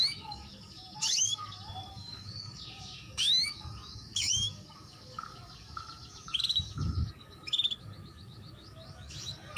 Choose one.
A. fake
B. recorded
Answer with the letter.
A